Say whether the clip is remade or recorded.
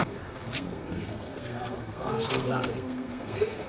remade